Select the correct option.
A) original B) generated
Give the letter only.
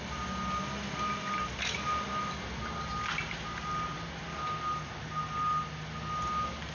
A